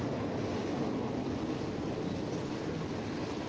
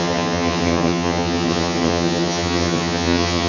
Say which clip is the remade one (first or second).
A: second